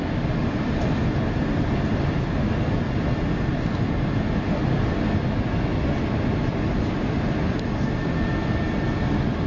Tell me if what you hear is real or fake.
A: real